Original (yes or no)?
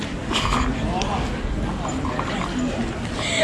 yes